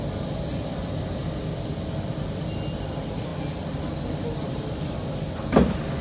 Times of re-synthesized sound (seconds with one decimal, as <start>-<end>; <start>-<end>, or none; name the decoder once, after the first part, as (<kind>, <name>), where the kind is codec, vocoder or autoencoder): none